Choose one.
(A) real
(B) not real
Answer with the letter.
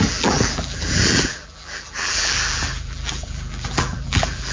B